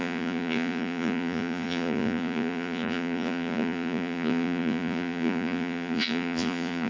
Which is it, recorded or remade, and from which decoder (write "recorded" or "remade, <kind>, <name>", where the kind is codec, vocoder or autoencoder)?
remade, vocoder, Vocos